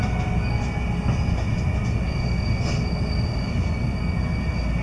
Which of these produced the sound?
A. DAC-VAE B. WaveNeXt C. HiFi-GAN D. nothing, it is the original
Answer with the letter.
D